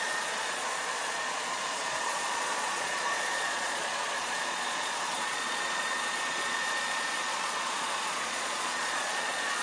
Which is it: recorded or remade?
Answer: remade